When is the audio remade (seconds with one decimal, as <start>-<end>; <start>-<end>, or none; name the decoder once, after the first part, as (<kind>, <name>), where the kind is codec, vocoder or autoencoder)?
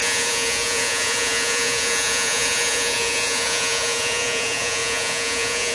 0.0-5.7 (vocoder, Vocos)